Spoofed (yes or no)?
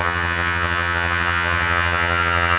yes